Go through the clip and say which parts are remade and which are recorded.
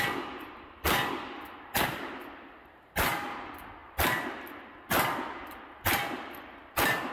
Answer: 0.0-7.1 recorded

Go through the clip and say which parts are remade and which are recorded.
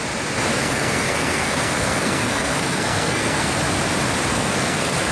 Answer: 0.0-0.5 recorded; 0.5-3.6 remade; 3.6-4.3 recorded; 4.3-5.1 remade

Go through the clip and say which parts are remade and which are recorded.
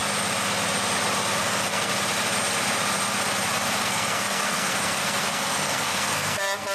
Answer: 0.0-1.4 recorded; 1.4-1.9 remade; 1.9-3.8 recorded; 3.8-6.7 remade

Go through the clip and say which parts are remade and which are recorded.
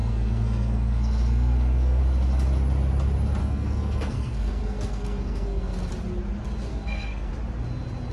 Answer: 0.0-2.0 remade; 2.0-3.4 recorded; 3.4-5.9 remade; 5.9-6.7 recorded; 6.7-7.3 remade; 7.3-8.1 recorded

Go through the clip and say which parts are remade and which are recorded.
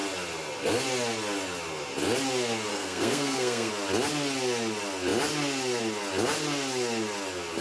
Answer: 0.0-2.7 recorded; 2.7-3.7 remade; 3.7-7.6 recorded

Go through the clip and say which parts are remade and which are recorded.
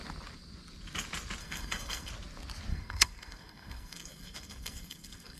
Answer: 0.0-1.4 recorded; 1.4-2.1 remade; 2.1-2.7 recorded; 2.7-5.4 remade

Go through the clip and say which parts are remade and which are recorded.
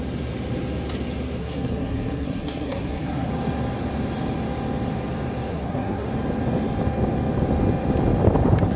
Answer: 0.0-1.4 recorded; 1.4-3.3 remade; 3.3-5.5 recorded; 5.5-6.1 remade; 6.1-8.8 recorded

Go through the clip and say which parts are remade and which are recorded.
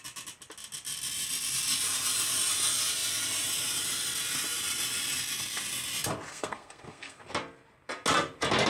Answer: 0.0-6.3 recorded; 6.3-7.2 remade; 7.2-8.7 recorded